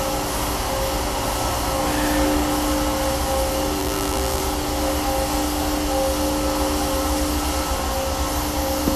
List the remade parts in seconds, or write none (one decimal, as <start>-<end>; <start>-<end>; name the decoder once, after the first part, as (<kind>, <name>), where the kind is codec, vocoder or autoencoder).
3.8-4.4 (vocoder, BigVGAN v2)